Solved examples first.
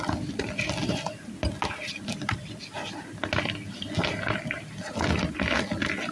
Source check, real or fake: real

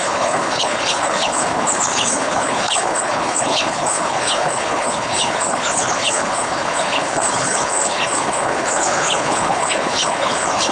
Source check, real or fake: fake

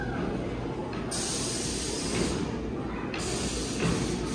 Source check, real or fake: real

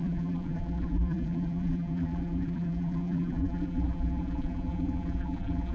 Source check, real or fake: fake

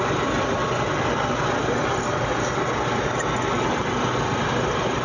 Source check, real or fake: real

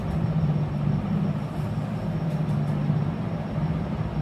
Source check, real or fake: real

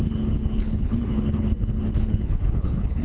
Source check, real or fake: fake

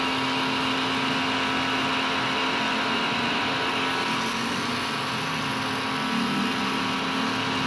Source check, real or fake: real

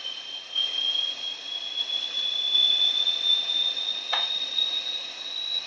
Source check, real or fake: fake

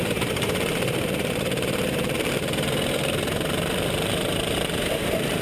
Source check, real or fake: fake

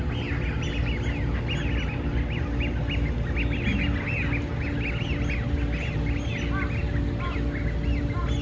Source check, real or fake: real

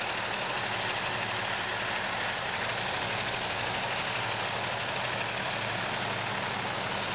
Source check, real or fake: real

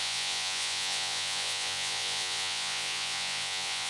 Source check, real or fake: fake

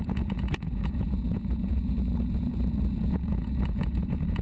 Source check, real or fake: fake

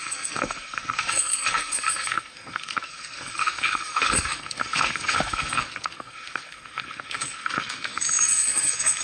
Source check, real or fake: fake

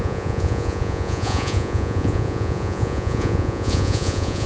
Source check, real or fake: fake